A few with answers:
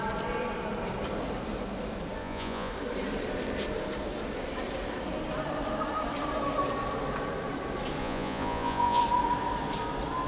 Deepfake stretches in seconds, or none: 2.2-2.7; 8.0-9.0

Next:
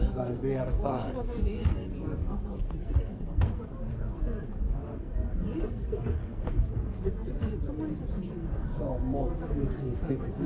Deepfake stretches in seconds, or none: 0.0-7.5; 8.1-10.5

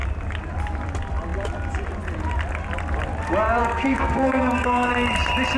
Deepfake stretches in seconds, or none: 3.6-4.9

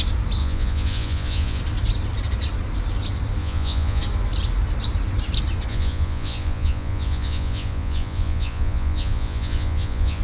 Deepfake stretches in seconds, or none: 0.4-1.6; 3.4-4.0; 5.7-10.2

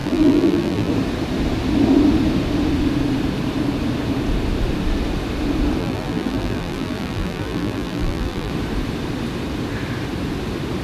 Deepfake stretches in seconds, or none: 0.0-0.9; 5.8-8.5

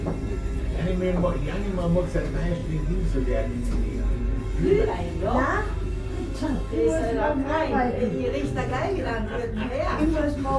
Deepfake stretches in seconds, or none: none

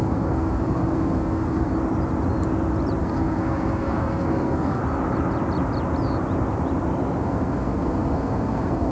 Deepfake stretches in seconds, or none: 0.0-1.7; 3.0-4.8; 7.2-8.9